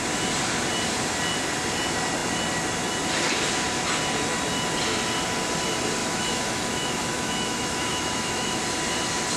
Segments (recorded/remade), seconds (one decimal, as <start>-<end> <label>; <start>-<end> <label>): 0.0-6.0 recorded; 6.0-8.6 remade; 8.6-9.4 recorded